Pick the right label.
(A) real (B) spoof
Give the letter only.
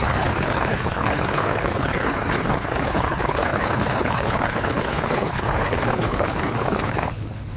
B